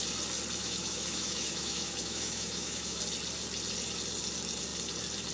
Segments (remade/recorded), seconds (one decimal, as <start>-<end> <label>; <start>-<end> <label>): 0.0-0.6 recorded; 0.6-3.0 remade; 3.0-5.3 recorded